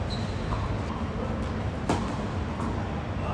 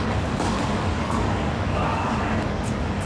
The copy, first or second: second